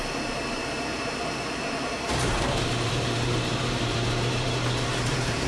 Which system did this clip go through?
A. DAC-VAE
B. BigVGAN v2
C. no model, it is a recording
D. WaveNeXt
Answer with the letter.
B